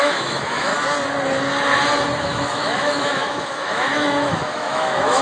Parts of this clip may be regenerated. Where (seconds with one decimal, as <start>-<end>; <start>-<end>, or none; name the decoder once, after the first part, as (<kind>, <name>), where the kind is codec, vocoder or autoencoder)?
0.0-0.7 (autoencoder, DAC-VAE); 2.2-5.2